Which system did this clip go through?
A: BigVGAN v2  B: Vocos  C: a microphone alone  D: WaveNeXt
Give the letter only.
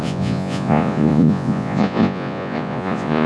B